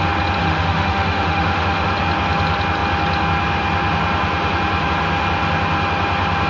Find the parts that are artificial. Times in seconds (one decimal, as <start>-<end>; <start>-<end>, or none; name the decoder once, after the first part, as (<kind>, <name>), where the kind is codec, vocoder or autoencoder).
0.4-1.9 (autoencoder, DAC-VAE)